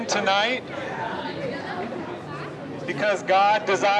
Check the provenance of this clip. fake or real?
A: real